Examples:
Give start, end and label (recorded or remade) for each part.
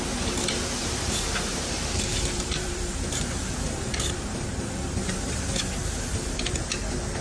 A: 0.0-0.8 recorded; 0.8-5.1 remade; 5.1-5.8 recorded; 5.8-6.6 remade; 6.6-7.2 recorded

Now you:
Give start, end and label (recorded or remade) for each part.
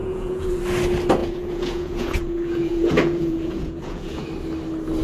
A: 0.0-0.6 remade; 0.6-1.2 recorded; 1.2-4.2 remade; 4.2-5.0 recorded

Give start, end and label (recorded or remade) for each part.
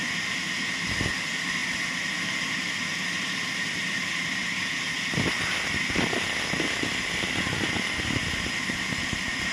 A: 0.0-9.5 recorded